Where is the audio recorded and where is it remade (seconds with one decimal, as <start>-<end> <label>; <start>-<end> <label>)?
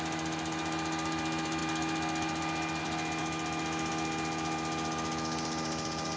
0.0-6.2 recorded